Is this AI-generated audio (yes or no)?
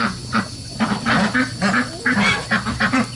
no